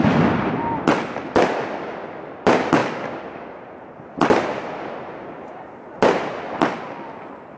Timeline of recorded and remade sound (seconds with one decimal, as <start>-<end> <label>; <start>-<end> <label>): 0.0-7.6 recorded